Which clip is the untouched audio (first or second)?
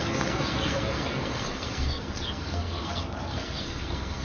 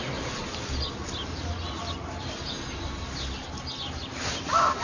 second